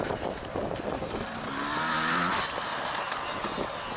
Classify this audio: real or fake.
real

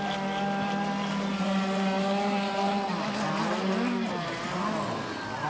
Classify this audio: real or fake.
real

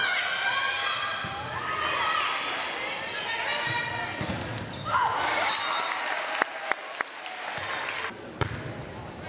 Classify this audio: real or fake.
real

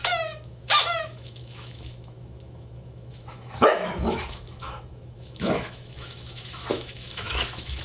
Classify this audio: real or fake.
fake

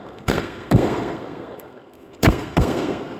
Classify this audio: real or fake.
fake